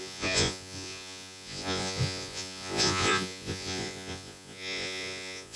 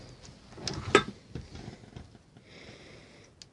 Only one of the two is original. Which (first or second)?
second